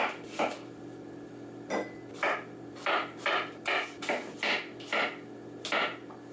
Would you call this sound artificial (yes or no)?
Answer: no